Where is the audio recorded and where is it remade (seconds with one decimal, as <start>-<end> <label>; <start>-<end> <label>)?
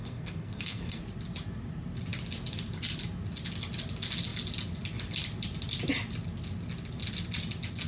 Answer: 0.0-1.0 remade; 1.0-7.9 recorded